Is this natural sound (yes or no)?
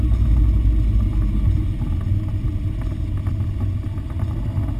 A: yes